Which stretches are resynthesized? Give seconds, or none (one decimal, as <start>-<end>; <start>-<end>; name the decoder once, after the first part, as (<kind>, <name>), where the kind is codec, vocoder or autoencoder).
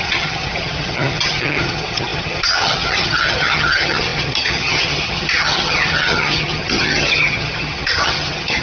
0.0-8.6 (vocoder, HiFi-GAN)